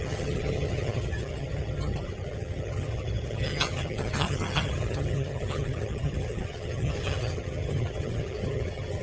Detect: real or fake fake